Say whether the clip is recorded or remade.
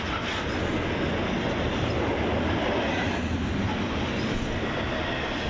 recorded